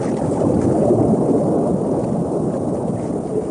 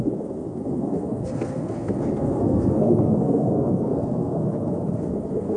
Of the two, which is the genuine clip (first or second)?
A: first